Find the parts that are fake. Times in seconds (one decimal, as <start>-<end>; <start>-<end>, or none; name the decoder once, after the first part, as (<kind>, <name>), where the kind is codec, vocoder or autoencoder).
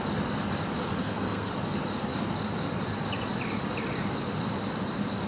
1.0-1.5 (codec, SNAC)